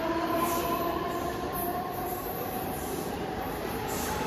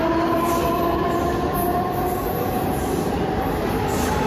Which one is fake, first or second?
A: first